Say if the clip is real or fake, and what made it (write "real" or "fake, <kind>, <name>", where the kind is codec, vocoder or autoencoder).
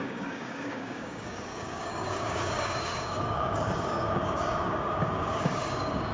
fake, codec, DAC